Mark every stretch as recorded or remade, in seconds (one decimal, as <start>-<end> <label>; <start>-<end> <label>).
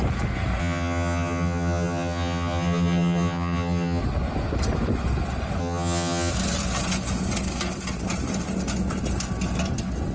0.0-0.6 recorded; 0.6-4.0 remade; 4.0-5.6 recorded; 5.6-6.3 remade; 6.3-10.1 recorded